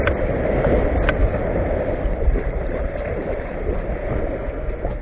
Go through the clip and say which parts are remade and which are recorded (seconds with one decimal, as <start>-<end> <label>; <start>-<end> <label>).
0.0-1.2 recorded; 1.2-4.2 remade; 4.2-5.0 recorded